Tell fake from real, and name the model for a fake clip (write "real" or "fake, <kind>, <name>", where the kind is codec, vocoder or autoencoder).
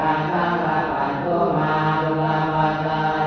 real